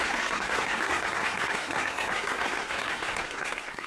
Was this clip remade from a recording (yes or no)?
yes